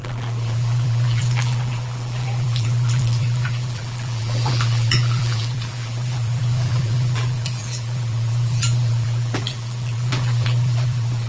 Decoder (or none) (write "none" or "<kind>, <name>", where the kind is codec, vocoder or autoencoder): vocoder, BigVGAN v2